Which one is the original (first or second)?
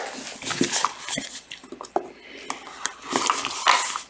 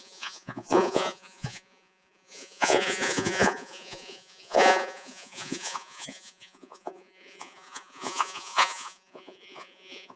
first